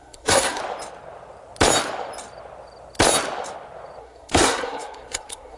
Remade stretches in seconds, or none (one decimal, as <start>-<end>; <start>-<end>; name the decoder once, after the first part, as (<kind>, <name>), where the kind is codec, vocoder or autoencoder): 0.0-0.6 (codec, SNAC); 4.0-5.6